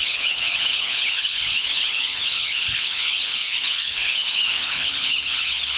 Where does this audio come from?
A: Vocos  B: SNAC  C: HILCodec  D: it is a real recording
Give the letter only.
C